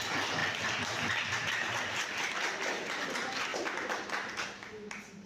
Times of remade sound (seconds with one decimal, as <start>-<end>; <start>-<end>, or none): none